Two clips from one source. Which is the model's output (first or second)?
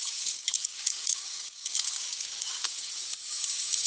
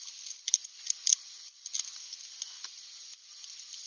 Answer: first